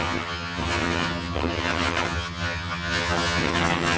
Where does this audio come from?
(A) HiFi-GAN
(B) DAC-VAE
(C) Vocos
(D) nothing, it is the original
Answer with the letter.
A